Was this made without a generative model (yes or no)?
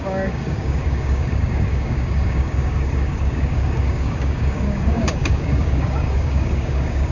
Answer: no